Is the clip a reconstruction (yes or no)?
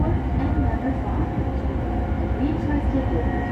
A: no